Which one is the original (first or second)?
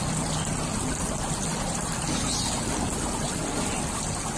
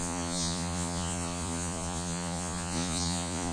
first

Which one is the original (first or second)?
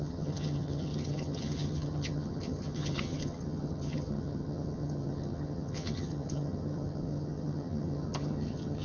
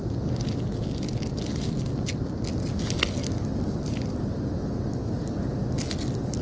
second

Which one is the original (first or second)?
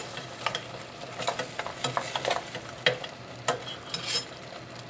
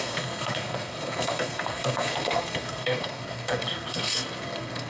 first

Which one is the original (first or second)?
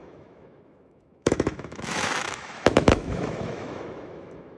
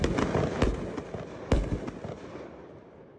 second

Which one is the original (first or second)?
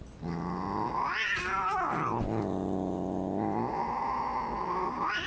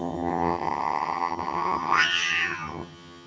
first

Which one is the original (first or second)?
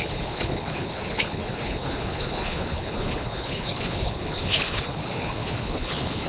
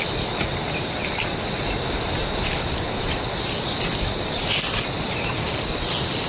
second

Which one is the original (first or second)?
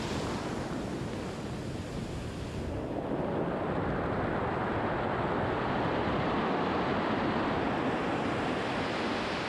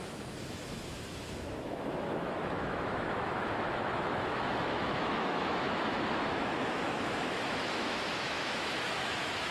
first